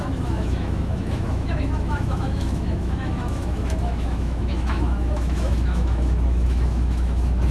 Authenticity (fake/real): fake